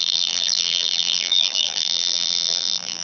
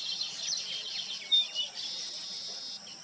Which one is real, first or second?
second